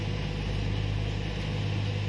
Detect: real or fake real